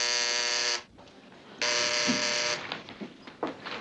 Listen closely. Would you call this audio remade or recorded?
recorded